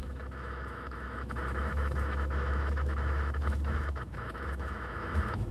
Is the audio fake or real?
fake